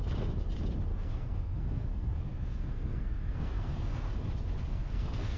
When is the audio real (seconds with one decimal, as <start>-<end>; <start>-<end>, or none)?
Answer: 0.0-0.9; 4.1-4.7